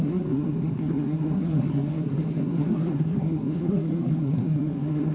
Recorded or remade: remade